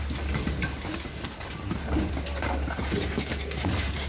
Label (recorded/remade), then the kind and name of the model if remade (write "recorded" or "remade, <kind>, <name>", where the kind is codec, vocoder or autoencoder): recorded